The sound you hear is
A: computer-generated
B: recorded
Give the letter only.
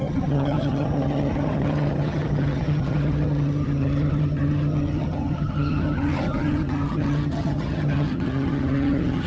A